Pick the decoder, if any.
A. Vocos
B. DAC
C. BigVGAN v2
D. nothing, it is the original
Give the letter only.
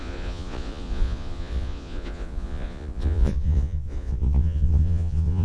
A